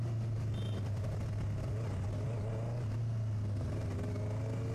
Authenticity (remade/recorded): recorded